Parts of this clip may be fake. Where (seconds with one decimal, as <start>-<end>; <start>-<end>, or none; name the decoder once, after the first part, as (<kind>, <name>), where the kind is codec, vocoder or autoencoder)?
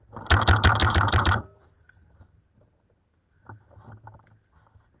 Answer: 0.8-3.8 (vocoder, BigVGAN v2)